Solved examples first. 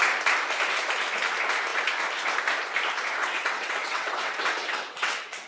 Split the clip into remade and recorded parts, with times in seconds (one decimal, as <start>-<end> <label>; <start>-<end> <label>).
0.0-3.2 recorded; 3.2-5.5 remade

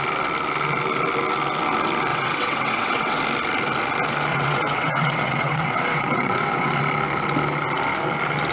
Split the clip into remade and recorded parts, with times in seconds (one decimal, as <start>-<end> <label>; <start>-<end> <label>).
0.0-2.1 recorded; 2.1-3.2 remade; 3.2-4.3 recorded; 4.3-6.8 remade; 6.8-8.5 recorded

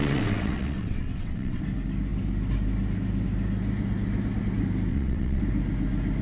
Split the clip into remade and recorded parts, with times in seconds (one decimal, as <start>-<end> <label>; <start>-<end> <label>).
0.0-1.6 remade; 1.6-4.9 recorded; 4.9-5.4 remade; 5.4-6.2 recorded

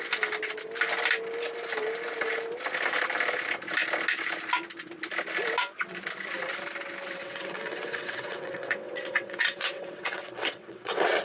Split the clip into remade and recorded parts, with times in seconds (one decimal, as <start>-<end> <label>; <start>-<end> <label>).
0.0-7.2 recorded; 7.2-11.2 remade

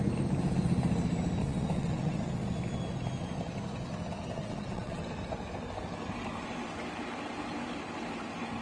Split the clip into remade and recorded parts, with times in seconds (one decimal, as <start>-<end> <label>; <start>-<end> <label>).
0.0-1.4 recorded; 1.4-2.3 remade; 2.3-4.4 recorded; 4.4-5.0 remade; 5.0-8.6 recorded